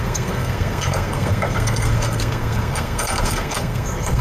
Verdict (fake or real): fake